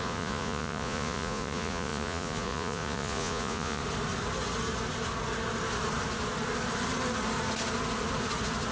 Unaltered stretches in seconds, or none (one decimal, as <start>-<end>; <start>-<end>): 3.8-8.7